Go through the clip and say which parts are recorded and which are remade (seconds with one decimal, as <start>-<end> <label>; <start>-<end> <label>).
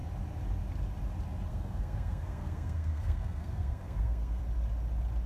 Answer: 0.0-1.5 recorded; 1.5-4.4 remade; 4.4-5.3 recorded